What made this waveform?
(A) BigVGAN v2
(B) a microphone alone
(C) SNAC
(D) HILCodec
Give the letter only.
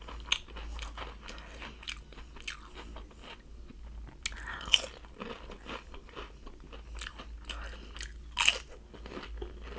B